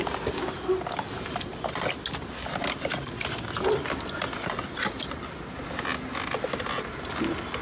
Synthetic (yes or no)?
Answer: no